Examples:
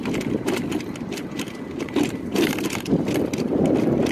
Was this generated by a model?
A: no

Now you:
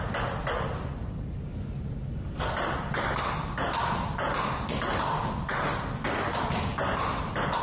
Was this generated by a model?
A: no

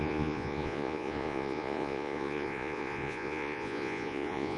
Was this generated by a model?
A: yes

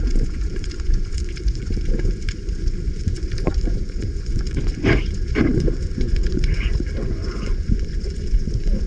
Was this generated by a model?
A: yes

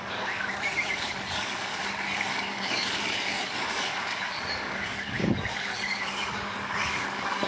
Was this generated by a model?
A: yes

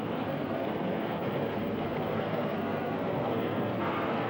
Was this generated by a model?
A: yes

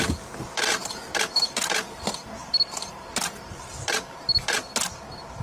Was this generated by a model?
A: no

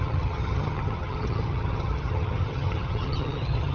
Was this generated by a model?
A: yes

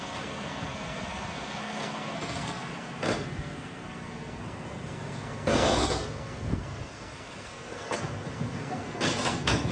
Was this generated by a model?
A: yes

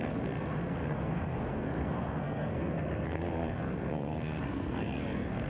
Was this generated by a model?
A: yes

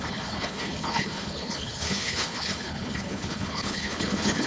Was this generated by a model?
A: yes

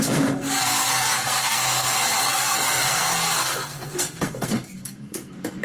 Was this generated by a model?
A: yes